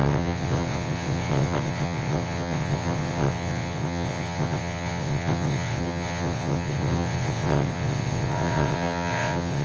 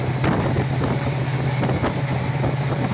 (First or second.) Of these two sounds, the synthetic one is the first